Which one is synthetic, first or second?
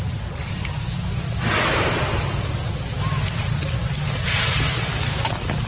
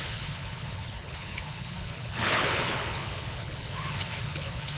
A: second